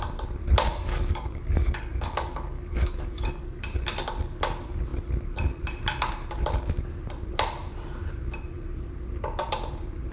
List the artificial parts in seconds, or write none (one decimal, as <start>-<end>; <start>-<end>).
0.7-3.6